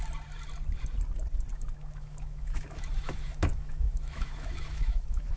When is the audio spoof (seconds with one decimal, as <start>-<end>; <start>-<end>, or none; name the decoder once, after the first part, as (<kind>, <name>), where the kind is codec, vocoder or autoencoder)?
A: 1.5-5.4 (autoencoder, DAC-VAE)